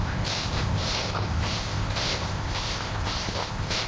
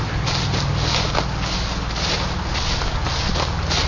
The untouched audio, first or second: second